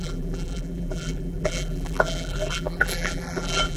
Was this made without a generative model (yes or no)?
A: no